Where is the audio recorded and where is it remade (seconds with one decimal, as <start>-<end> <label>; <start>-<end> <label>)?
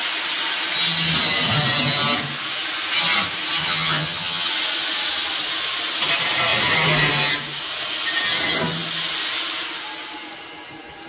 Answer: 0.0-3.6 recorded; 3.6-4.5 remade; 4.5-11.1 recorded